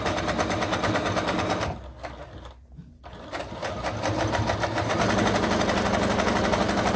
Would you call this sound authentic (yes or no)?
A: yes